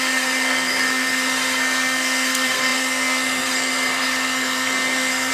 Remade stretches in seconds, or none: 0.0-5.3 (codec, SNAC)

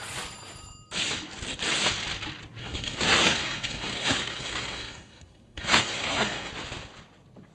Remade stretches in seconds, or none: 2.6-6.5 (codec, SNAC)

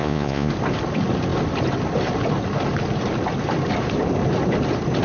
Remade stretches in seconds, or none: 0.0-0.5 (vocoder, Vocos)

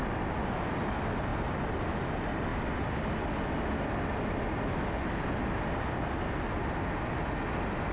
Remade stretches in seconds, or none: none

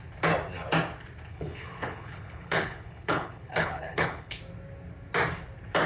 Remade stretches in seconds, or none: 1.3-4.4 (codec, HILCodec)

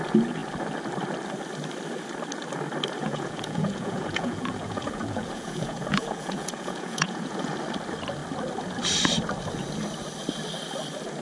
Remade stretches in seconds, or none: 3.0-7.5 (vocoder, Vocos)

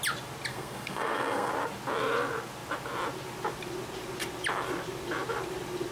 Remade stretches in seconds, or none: 0.5-1.5 (codec, SNAC)

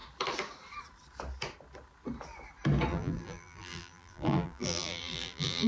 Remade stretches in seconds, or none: 2.9-5.7 (vocoder, BigVGAN v2)